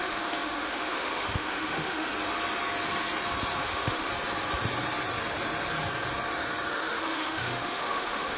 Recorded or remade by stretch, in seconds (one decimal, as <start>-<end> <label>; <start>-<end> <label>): 0.0-2.1 remade; 2.1-3.6 recorded; 3.6-4.1 remade; 4.1-6.7 recorded; 6.7-8.4 remade